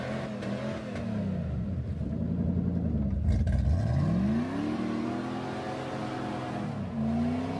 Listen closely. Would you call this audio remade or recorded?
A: recorded